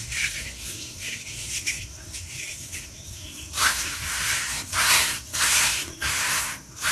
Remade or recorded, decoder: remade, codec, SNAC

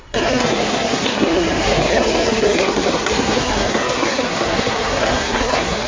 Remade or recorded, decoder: remade, codec, SNAC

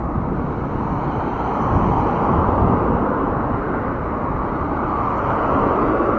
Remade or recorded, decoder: recorded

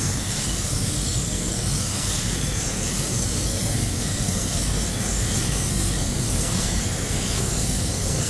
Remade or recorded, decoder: remade, codec, SNAC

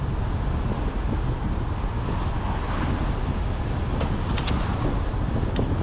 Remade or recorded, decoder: recorded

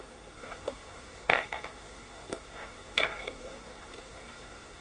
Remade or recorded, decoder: remade, codec, SNAC